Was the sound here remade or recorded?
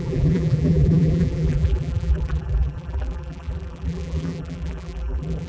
remade